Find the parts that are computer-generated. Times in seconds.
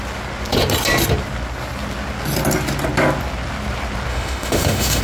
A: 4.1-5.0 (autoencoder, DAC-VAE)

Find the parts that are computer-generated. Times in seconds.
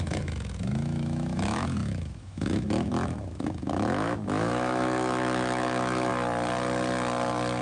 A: 0.0-6.1 (autoencoder, DAC-VAE)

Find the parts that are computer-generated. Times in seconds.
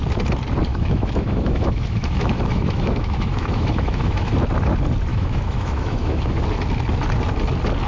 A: 0.7-4.3 (autoencoder, DAC-VAE); 5.1-6.4